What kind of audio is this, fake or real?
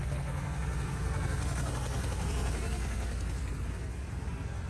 fake